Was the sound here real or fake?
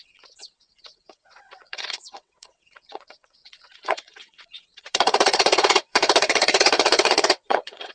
fake